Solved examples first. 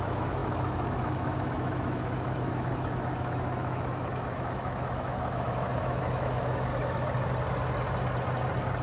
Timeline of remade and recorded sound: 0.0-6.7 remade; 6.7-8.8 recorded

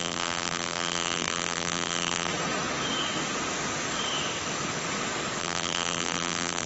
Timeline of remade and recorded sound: 0.0-2.3 remade; 2.3-5.4 recorded; 5.4-6.7 remade